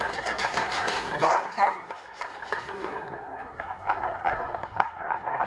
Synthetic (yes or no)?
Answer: yes